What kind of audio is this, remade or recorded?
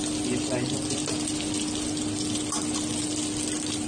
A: recorded